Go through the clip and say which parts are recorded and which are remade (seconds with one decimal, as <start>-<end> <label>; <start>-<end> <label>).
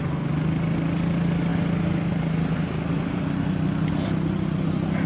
0.0-5.1 recorded